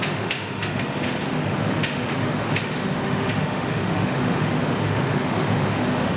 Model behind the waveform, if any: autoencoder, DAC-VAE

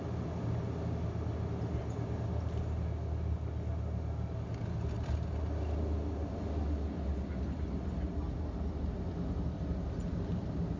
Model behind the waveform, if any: none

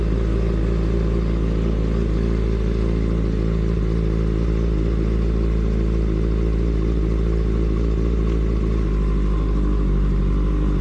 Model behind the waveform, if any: none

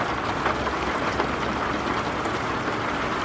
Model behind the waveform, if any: none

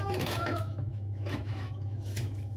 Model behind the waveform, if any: autoencoder, DAC-VAE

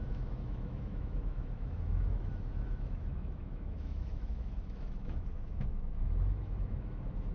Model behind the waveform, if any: autoencoder, DAC-VAE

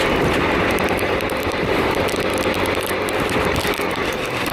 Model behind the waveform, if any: none